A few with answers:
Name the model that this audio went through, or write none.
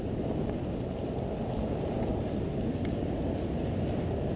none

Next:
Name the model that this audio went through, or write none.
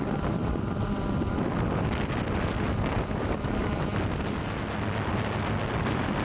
none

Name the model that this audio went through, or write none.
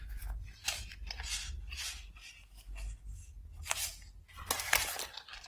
none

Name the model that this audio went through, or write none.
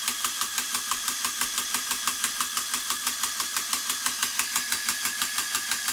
none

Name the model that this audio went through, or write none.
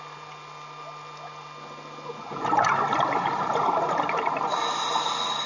none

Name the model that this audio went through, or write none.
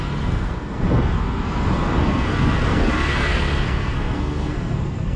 codec, SNAC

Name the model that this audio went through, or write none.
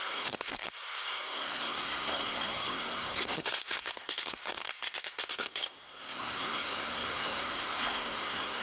codec, SNAC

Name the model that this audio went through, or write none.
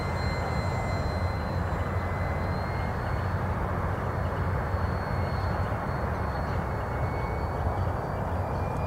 none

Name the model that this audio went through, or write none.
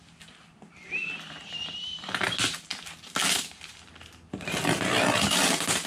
none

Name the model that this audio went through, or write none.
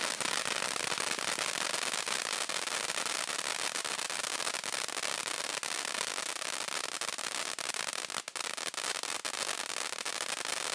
none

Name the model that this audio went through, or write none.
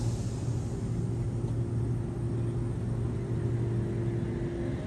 none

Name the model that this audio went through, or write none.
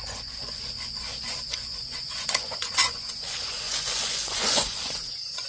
vocoder, Vocos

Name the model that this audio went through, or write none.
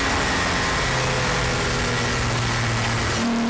none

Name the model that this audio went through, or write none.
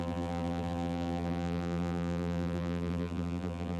vocoder, BigVGAN v2